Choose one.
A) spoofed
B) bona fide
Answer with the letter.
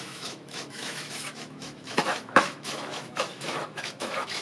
A